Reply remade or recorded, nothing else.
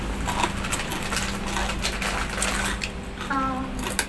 recorded